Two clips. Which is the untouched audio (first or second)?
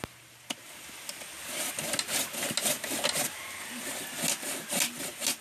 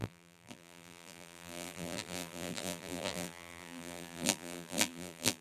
first